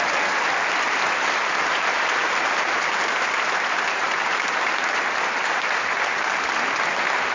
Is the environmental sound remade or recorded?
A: remade